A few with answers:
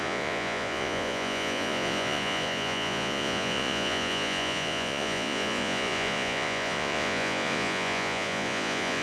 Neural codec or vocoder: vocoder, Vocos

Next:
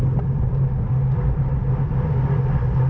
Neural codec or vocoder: none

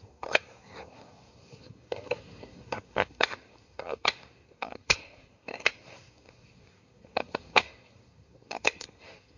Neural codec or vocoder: codec, SNAC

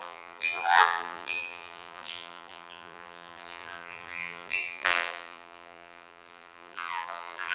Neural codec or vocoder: vocoder, BigVGAN v2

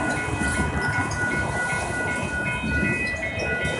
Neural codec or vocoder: none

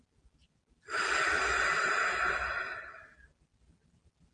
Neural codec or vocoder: none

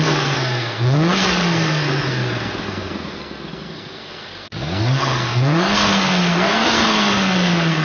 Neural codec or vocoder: codec, SNAC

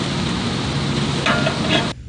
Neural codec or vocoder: none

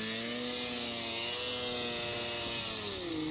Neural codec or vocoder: none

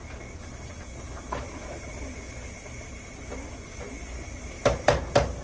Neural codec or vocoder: none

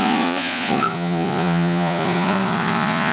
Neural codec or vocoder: vocoder, Vocos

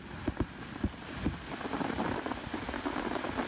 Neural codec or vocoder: none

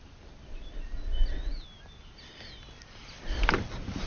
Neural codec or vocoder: none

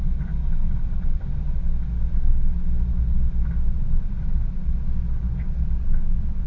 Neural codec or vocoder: none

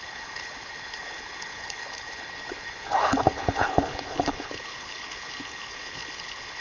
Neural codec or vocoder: codec, HILCodec